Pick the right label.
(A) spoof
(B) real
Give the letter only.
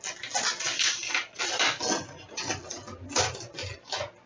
B